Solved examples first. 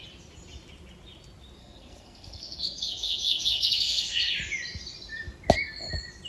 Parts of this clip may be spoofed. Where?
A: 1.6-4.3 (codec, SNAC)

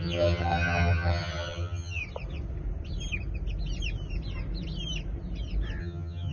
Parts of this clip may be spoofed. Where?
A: 0.0-2.0 (vocoder, HiFi-GAN); 5.8-6.3